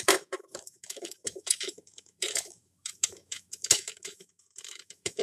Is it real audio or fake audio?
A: fake